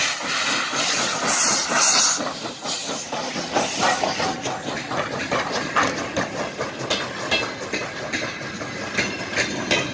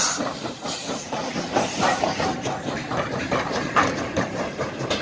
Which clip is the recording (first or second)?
first